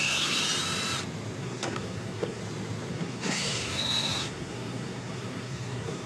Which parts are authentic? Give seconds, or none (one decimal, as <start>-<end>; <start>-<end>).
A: 0.4-1.4; 2.4-2.9